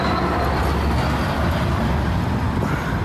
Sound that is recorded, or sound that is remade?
recorded